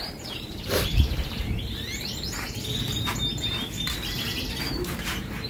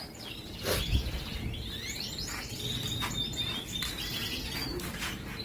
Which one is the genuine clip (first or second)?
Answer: second